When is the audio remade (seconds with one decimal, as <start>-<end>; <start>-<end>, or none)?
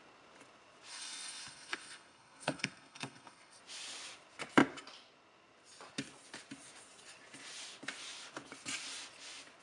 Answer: 0.9-3.6